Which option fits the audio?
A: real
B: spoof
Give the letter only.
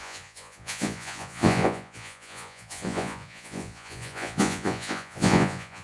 B